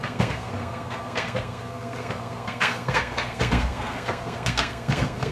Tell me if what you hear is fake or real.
fake